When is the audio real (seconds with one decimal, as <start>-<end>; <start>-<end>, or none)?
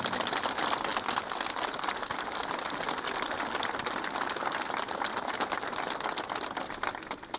0.0-7.4